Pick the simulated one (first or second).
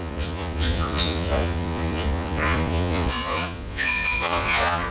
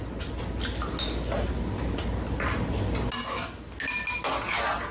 first